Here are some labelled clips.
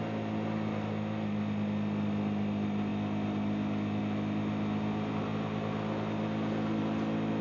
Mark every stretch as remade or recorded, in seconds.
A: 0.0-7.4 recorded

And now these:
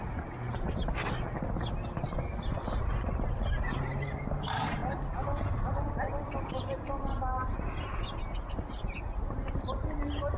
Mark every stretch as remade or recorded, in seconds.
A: 0.0-10.4 recorded

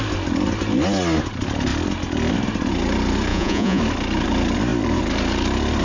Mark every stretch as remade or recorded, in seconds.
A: 0.0-3.3 recorded; 3.3-3.8 remade; 3.8-5.8 recorded

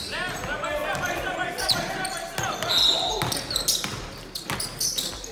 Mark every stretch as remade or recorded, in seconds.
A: 0.0-5.3 recorded

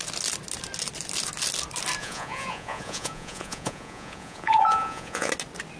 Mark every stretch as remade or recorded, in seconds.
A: 0.0-2.0 recorded; 2.0-5.3 remade; 5.3-5.8 recorded

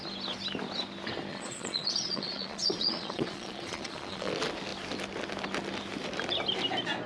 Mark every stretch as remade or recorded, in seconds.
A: 0.0-1.3 recorded; 1.3-4.3 remade; 4.3-7.1 recorded